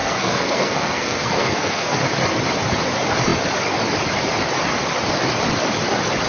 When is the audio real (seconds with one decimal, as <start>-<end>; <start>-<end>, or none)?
2.0-6.3